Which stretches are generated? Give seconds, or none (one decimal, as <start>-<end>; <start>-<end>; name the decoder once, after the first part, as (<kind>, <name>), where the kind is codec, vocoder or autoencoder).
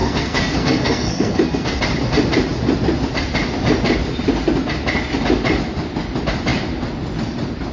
0.0-1.8 (codec, SNAC)